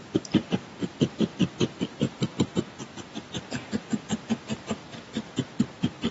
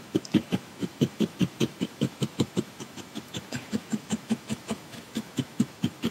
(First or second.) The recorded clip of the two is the first